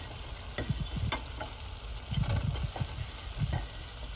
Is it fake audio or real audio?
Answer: real